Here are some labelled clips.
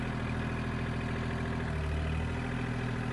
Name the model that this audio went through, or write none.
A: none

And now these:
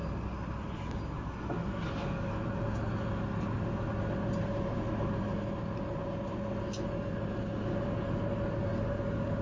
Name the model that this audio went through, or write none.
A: none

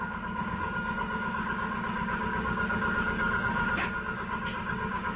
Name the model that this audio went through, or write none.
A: codec, DAC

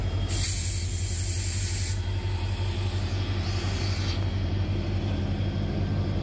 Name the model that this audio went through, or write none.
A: none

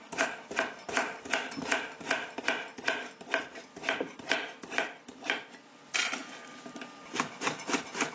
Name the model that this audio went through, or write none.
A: none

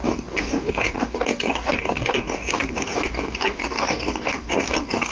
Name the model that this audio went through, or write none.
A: codec, DAC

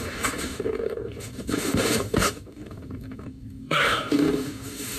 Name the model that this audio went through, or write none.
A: codec, DAC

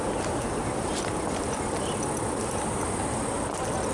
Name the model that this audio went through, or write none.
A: none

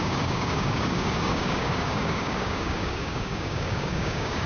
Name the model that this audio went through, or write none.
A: codec, DAC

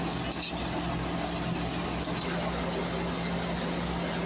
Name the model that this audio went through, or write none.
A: none